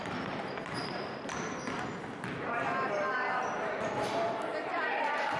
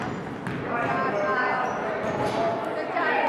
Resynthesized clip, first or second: first